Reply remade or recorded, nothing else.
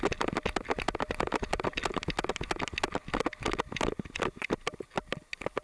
recorded